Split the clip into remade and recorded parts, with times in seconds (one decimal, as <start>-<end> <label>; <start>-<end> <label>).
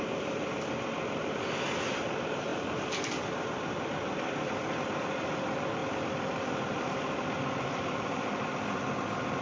0.0-9.4 recorded